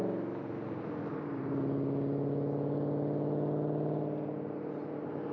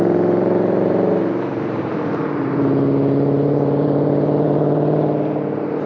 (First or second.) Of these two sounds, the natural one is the first